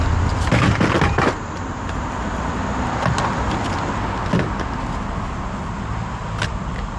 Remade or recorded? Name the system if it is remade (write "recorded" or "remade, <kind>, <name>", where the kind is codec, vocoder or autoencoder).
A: recorded